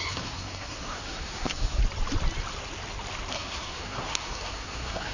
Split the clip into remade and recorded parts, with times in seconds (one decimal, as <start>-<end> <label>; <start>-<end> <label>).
0.0-1.8 remade; 1.8-3.3 recorded; 3.3-5.1 remade